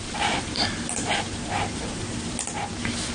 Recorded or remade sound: recorded